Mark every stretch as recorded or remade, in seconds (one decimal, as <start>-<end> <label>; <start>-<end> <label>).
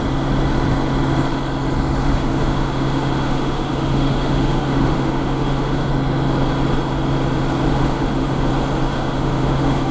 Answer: 0.0-2.0 recorded; 2.0-5.9 remade; 5.9-7.7 recorded; 7.7-8.5 remade; 8.5-8.9 recorded; 8.9-9.9 remade